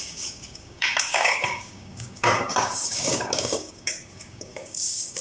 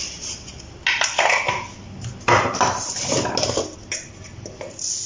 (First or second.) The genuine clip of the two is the second